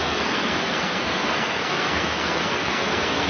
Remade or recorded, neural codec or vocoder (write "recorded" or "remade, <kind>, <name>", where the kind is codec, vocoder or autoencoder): remade, codec, SNAC